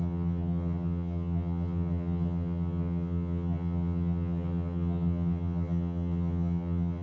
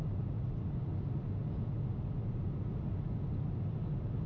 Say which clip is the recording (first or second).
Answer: second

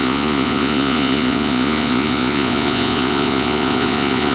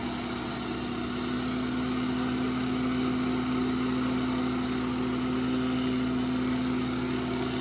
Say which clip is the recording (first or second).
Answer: second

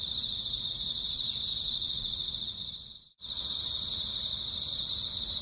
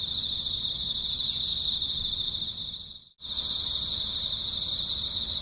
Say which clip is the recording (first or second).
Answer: second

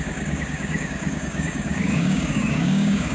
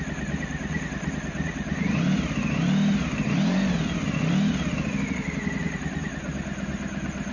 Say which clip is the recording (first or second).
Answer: second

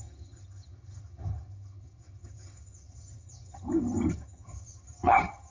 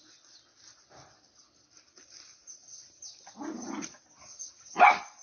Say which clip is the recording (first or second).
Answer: second